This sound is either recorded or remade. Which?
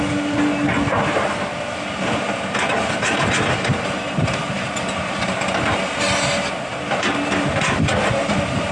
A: recorded